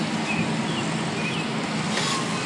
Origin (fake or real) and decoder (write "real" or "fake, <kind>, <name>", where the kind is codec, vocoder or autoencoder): real